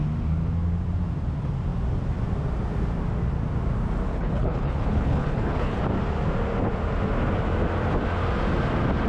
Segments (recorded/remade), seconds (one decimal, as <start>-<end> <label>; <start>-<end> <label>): 0.0-4.1 recorded; 4.1-5.8 remade; 5.8-9.1 recorded